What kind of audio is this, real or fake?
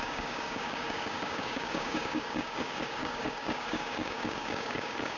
fake